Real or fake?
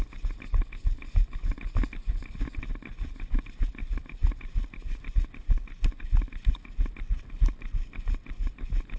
real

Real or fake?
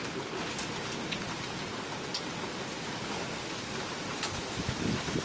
real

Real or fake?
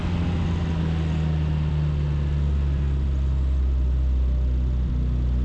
real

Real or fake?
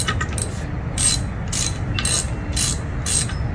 real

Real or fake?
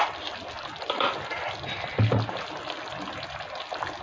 real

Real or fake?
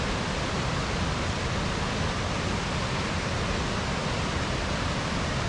real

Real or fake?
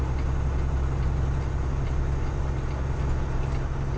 real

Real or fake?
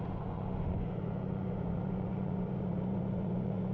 fake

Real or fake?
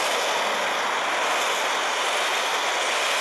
real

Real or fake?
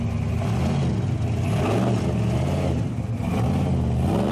real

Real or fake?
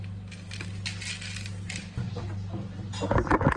real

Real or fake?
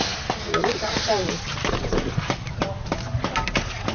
real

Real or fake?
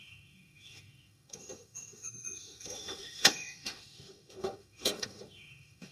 fake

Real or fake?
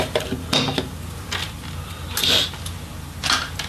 real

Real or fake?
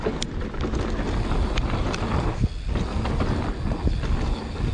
real